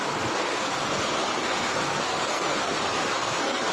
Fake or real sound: fake